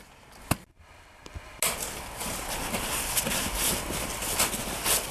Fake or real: real